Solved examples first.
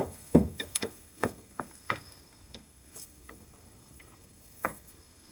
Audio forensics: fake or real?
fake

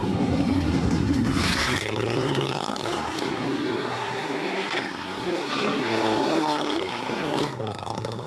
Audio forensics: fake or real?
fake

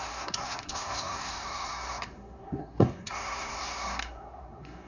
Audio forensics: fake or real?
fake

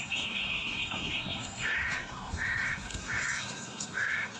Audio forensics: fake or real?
fake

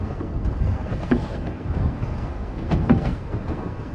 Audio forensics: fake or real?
fake